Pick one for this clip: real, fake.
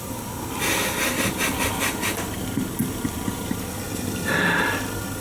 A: real